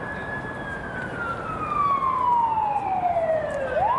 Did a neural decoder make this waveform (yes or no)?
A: no